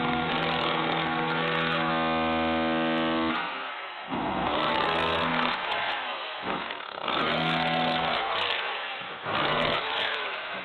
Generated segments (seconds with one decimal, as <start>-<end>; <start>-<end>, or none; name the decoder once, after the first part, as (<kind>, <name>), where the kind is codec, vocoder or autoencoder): 0.0-1.9 (codec, SNAC); 3.3-10.6